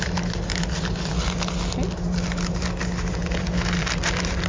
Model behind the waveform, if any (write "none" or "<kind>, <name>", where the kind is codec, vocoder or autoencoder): none